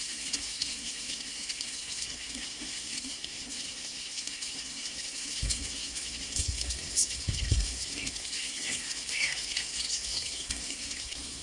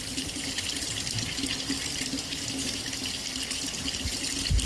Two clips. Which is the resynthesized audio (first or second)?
first